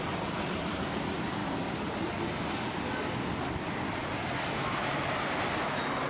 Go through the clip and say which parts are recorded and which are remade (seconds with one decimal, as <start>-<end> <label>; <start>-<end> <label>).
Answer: 0.0-6.1 recorded